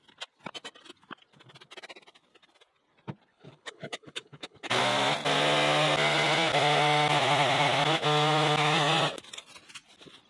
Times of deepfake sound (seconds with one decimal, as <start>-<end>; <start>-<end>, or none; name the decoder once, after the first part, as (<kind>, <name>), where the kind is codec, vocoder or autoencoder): 3.3-4.8 (codec, HILCodec)